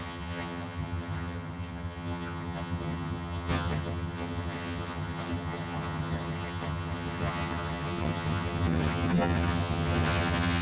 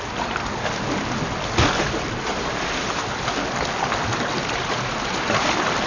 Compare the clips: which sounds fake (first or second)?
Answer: first